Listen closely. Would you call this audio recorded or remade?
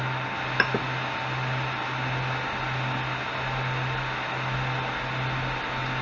recorded